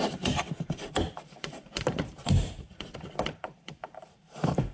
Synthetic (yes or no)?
yes